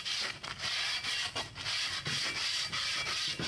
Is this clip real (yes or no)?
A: yes